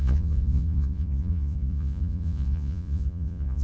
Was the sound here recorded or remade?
remade